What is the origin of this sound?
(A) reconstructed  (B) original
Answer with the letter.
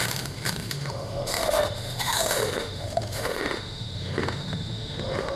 A